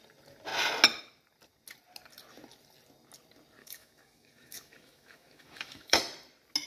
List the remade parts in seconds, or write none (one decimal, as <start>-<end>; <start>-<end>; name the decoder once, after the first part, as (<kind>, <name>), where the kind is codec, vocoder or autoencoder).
3.6-6.0 (autoencoder, DAC-VAE)